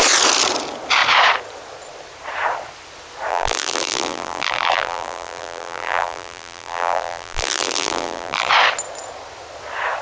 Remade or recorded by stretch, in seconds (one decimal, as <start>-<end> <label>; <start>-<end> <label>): 0.0-3.3 recorded; 3.3-8.5 remade; 8.5-10.0 recorded